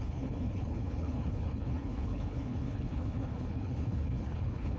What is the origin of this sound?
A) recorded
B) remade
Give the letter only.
B